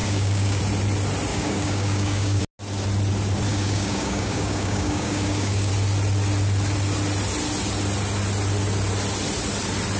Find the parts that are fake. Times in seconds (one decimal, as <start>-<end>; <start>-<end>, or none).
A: 0.0-0.6; 1.3-2.4; 3.5-5.7